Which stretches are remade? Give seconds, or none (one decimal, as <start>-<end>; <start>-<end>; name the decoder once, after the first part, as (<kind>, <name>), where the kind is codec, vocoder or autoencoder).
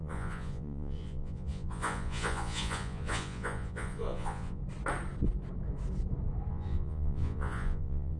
0.0-4.6 (vocoder, Vocos); 6.5-8.2